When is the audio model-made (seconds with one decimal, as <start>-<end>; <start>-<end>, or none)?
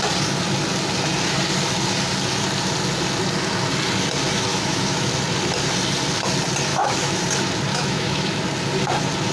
4.5-5.1; 6.7-7.2; 7.7-8.4